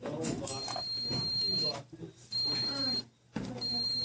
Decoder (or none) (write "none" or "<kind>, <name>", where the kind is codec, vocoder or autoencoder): vocoder, BigVGAN v2